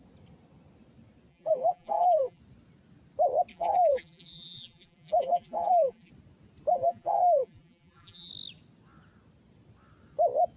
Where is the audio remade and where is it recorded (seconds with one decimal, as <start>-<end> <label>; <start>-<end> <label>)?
0.0-1.3 recorded; 1.3-2.4 remade; 2.4-3.5 recorded; 3.5-6.1 remade; 6.1-6.7 recorded; 6.7-8.3 remade; 8.3-10.6 recorded